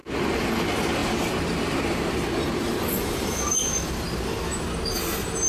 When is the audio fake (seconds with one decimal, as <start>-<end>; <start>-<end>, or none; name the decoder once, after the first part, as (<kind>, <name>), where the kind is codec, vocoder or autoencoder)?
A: 0.0-0.5 (vocoder, BigVGAN v2); 1.0-3.7